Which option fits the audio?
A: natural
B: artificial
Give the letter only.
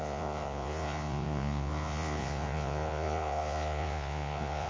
B